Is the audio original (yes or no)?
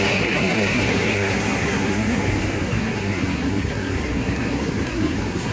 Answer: no